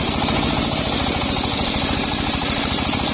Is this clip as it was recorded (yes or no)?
no